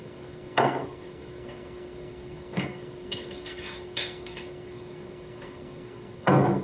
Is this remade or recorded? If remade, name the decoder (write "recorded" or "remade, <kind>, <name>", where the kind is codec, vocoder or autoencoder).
remade, codec, SNAC